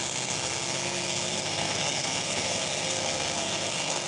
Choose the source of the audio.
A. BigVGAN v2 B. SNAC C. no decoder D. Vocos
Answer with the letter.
B